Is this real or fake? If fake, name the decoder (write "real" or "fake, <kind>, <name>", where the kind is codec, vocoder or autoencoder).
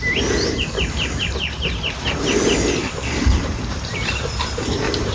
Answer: real